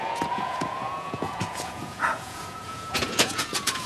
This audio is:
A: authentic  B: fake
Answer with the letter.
B